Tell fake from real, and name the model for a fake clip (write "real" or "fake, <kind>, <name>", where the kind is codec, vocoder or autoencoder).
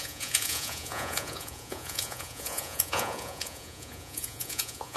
fake, vocoder, Vocos